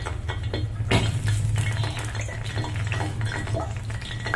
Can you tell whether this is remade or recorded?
recorded